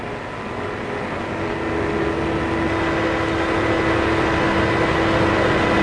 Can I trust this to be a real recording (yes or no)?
yes